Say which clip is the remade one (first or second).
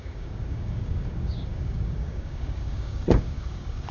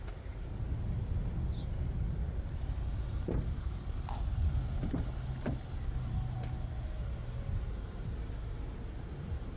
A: first